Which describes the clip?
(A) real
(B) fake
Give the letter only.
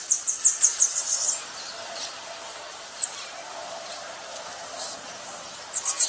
A